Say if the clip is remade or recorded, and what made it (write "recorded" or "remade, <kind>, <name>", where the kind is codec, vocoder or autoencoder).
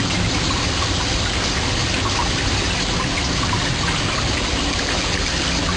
recorded